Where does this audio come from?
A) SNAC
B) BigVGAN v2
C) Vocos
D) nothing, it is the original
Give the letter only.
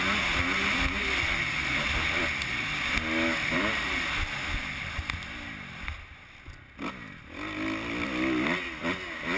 D